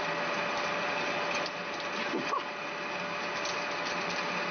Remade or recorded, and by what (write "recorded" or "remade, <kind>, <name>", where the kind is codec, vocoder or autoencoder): recorded